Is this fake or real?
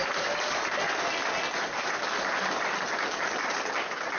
real